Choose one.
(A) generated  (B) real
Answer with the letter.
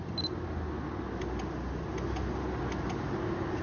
B